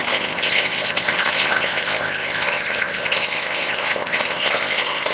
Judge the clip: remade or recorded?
remade